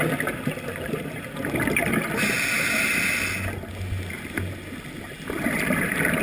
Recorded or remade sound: recorded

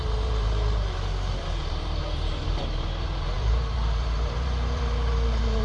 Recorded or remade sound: remade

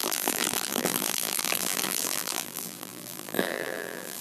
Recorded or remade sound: remade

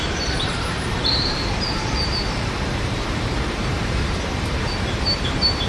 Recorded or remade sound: remade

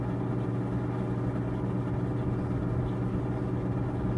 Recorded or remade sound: recorded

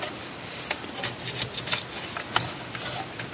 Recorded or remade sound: recorded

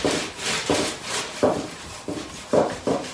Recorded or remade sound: remade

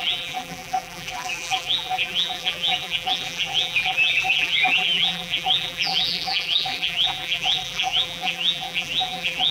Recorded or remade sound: remade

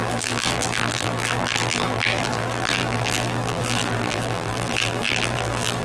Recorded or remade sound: remade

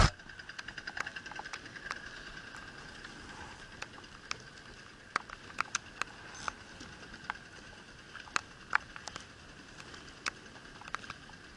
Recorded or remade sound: recorded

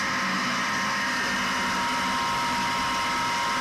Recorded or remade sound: recorded